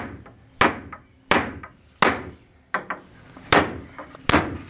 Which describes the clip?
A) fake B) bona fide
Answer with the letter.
B